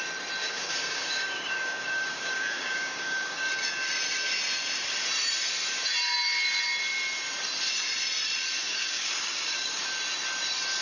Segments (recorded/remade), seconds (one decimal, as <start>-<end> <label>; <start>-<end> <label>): 0.0-0.4 recorded; 0.4-3.5 remade; 3.5-8.6 recorded; 8.6-9.8 remade; 9.8-10.8 recorded